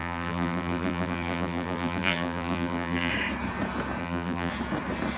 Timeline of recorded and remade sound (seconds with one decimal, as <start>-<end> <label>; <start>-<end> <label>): 0.0-3.1 remade; 3.1-4.0 recorded; 4.0-4.5 remade; 4.5-5.2 recorded